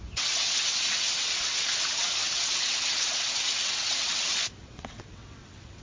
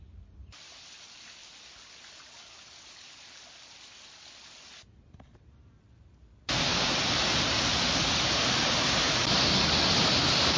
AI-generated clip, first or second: first